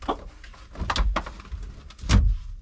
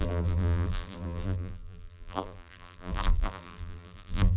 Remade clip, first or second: second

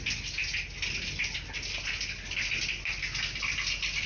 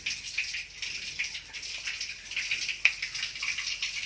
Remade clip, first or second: second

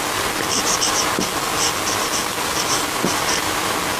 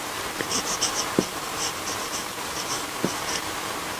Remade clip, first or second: second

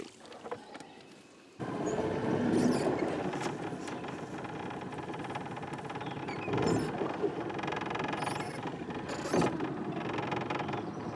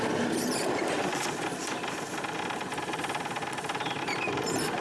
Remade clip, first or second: second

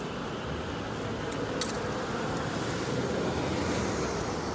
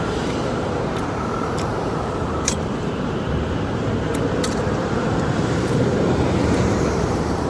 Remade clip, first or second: second